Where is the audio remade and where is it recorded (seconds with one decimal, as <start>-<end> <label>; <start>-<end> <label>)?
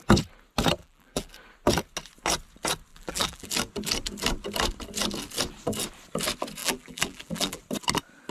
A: 0.0-0.8 recorded; 0.8-1.3 remade; 1.3-2.9 recorded; 2.9-3.5 remade; 3.5-6.6 recorded; 6.6-7.6 remade; 7.6-8.3 recorded